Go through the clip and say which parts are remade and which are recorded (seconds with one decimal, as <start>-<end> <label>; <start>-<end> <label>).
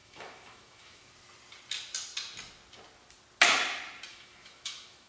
0.0-1.1 remade; 1.1-4.1 recorded; 4.1-5.1 remade